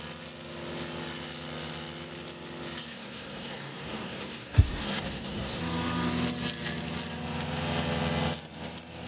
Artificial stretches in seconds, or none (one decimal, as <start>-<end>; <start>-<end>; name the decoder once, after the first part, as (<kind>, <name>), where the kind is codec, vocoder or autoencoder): 2.9-5.6 (codec, SNAC)